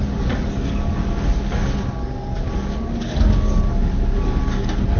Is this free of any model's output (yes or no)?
no